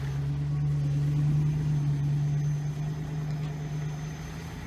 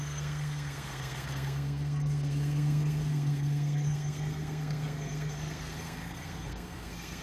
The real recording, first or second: first